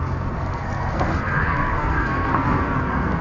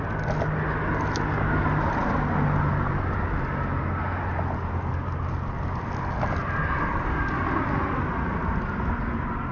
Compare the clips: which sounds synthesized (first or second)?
first